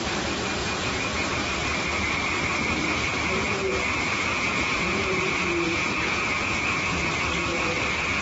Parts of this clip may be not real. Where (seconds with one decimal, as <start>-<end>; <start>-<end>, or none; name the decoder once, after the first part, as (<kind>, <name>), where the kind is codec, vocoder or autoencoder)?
0.6-1.3 (vocoder, Vocos); 4.3-7.1